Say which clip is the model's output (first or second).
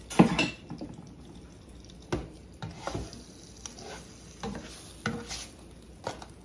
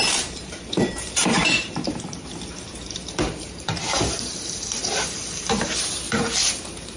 second